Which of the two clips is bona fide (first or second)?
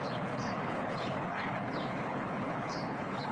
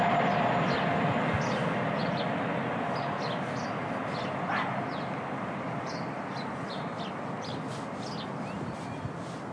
second